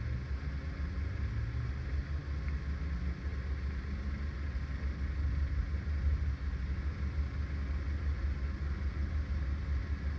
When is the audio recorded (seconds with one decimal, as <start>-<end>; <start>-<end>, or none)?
0.0-10.2